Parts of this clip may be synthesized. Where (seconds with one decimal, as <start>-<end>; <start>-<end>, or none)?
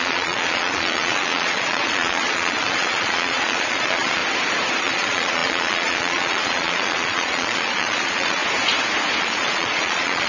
0.0-4.2; 4.8-8.4; 9.2-10.3